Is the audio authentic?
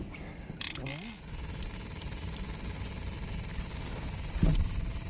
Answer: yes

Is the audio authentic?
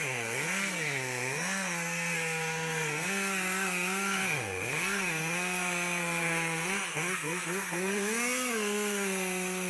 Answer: no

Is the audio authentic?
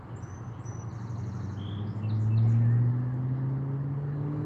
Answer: yes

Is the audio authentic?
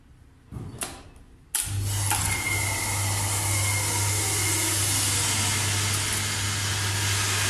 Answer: yes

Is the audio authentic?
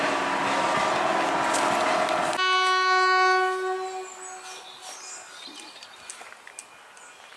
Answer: yes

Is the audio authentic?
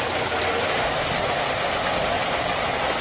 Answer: yes